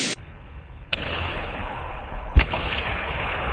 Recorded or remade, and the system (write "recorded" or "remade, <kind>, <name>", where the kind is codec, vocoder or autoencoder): remade, codec, HILCodec